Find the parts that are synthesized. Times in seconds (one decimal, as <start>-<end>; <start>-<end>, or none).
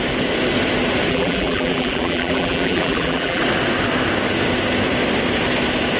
1.1-3.4